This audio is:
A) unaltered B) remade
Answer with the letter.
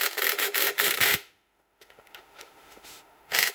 B